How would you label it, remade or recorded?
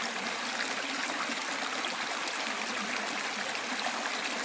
recorded